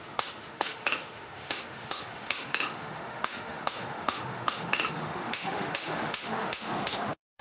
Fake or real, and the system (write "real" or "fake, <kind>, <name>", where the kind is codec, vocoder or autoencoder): fake, autoencoder, DAC-VAE